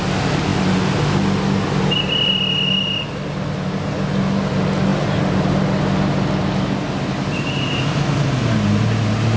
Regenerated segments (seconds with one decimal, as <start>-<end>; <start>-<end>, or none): none